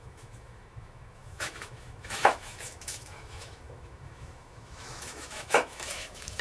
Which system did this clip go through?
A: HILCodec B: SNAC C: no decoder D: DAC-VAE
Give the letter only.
D